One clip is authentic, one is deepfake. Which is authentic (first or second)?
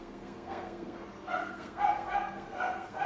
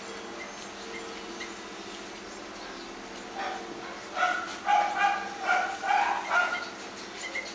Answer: second